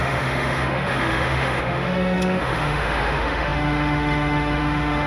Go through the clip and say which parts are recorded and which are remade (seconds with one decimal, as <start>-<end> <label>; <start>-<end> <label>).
0.0-5.1 remade